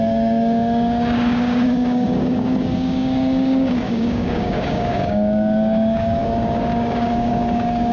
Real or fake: fake